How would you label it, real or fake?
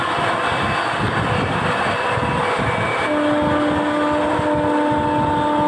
real